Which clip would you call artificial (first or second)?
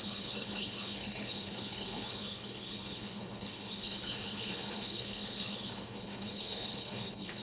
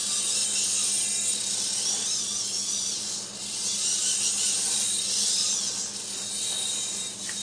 first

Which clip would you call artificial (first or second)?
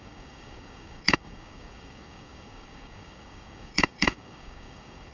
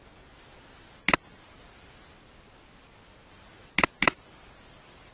first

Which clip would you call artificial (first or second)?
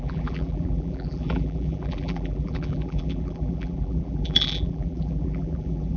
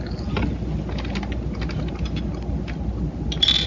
first